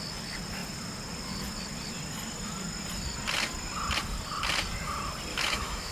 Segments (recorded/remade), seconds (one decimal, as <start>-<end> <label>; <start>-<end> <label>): 0.0-5.3 recorded; 5.3-5.9 remade